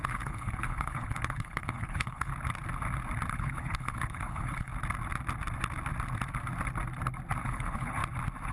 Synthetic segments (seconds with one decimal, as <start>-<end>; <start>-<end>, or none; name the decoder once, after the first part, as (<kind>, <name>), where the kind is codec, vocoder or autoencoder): 0.0-2.3 (codec, HILCodec); 3.3-4.7; 7.4-8.0